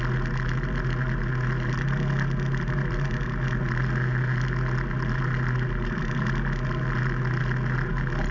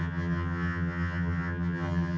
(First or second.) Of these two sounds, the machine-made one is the second